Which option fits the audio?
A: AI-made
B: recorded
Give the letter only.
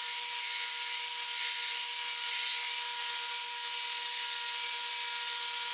B